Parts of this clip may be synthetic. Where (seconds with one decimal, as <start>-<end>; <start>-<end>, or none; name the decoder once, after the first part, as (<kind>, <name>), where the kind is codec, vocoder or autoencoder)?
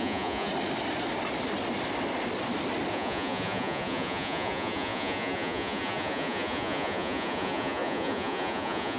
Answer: 0.0-0.5 (vocoder, Vocos); 2.9-9.0